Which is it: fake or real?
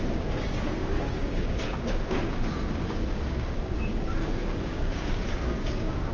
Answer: fake